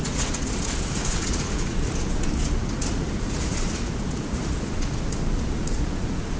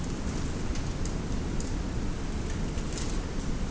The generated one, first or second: first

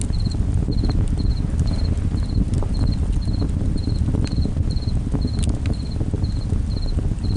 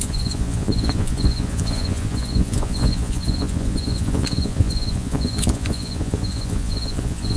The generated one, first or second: second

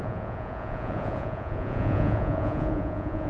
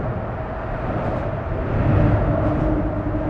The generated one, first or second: first